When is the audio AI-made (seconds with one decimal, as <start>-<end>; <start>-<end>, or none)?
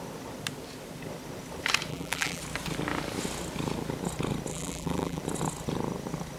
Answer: 1.9-2.4; 4.5-5.2